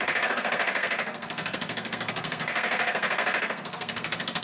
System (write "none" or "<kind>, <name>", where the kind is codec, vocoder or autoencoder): codec, SNAC